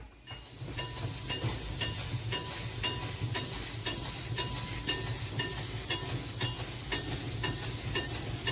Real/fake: real